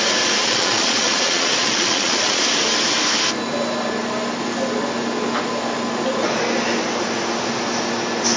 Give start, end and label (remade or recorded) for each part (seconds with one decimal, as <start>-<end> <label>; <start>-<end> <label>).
0.0-0.4 recorded; 0.4-2.4 remade; 2.4-8.4 recorded